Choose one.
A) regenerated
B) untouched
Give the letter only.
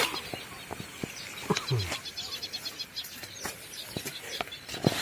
B